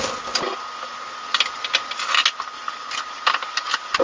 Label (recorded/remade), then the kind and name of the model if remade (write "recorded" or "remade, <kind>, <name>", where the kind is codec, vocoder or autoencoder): recorded